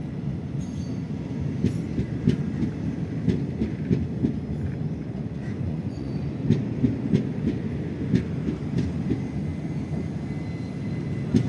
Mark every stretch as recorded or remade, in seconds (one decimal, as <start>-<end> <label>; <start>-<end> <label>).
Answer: 0.0-5.0 recorded; 5.0-6.1 remade; 6.1-11.5 recorded

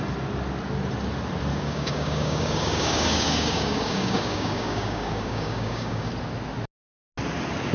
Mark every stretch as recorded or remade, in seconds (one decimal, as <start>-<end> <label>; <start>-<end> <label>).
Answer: 0.0-1.5 recorded; 1.5-6.1 remade; 6.1-7.7 recorded

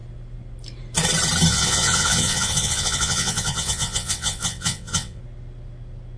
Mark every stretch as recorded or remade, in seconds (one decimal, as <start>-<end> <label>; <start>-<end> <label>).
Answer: 0.0-1.5 recorded; 1.5-5.2 remade; 5.2-6.2 recorded

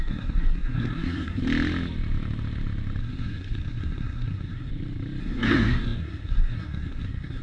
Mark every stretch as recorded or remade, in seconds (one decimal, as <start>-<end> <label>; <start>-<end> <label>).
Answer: 0.0-1.4 remade; 1.4-3.0 recorded; 3.0-4.7 remade; 4.7-5.2 recorded; 5.2-7.4 remade

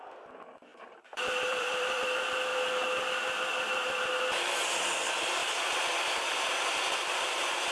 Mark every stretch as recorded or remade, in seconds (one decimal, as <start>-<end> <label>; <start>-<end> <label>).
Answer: 0.0-0.7 recorded; 0.7-2.0 remade; 2.0-7.7 recorded

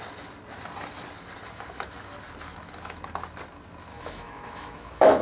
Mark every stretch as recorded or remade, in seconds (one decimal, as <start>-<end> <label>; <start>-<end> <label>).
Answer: 0.0-3.9 recorded; 3.9-5.2 remade

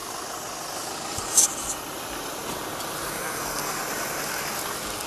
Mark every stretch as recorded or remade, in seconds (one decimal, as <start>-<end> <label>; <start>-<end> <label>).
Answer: 0.0-3.1 recorded; 3.1-3.8 remade; 3.8-5.1 recorded